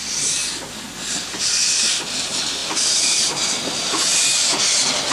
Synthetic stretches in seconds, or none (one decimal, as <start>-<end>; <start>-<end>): 0.0-0.4; 1.4-4.1